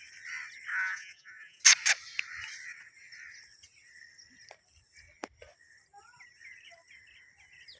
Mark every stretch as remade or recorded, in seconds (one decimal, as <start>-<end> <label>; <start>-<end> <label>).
0.0-0.7 recorded; 0.7-1.6 remade; 1.6-7.8 recorded